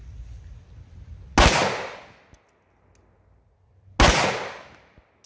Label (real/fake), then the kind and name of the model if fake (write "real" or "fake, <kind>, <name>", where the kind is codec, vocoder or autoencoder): real